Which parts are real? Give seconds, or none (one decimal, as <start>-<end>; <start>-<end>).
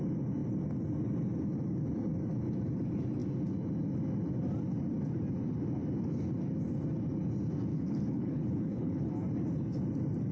0.0-7.7; 9.1-10.3